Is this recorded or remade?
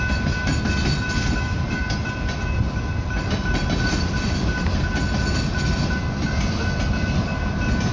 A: recorded